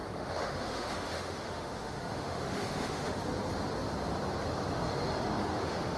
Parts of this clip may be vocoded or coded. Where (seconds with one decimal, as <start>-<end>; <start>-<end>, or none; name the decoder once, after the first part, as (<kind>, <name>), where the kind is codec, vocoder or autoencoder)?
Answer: 0.0-3.2 (autoencoder, DAC-VAE); 5.5-6.0